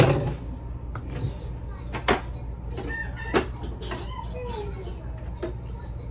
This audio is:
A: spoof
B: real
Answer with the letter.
B